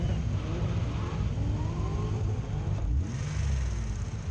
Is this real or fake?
real